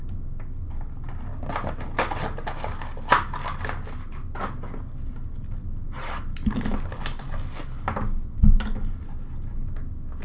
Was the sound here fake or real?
real